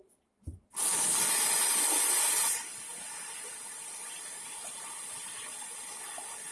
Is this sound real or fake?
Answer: real